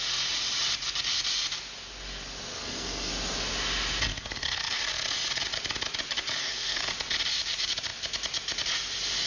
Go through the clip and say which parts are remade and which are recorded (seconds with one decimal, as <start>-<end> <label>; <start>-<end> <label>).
0.0-2.5 recorded; 2.5-3.1 remade; 3.1-4.1 recorded; 4.1-4.8 remade; 4.8-6.4 recorded; 6.4-6.9 remade; 6.9-9.3 recorded